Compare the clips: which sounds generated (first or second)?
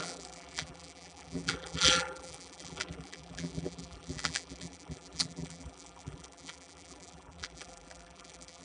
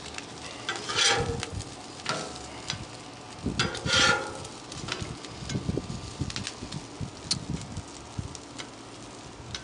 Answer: first